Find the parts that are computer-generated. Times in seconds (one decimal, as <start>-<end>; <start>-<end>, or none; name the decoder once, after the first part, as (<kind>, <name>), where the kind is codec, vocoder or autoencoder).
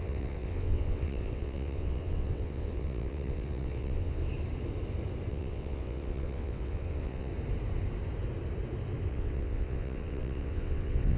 0.0-4.2 (vocoder, WaveNeXt); 5.3-7.3; 9.1-11.2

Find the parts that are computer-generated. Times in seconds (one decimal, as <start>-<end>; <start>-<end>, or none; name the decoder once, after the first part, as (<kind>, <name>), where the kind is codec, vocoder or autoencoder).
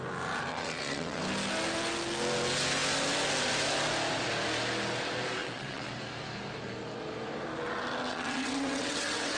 0.5-1.2 (vocoder, WaveNeXt); 5.4-5.9; 8.1-9.4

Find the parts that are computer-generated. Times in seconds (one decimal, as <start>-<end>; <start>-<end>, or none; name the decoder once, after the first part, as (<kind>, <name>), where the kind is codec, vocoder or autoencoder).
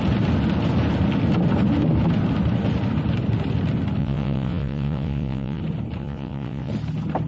4.0-5.6 (vocoder, WaveNeXt); 6.0-6.7